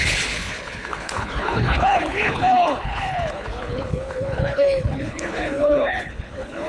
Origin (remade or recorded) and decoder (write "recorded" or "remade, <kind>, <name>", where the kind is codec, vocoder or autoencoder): remade, codec, HILCodec